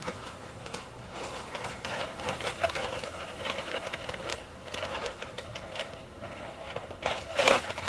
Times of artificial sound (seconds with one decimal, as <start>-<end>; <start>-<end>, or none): 0.0-7.9